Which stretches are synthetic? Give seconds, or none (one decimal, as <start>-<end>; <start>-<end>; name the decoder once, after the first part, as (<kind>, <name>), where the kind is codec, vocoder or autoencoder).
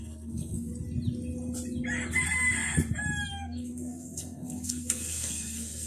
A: 0.0-0.7 (codec, SNAC); 3.3-5.9